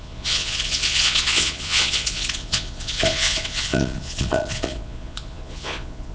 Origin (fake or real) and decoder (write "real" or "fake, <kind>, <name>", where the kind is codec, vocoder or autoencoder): fake, vocoder, Vocos